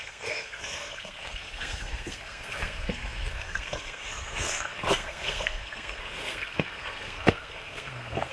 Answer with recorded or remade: remade